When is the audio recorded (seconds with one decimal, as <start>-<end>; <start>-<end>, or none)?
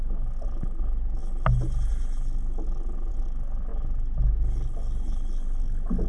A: 0.0-6.1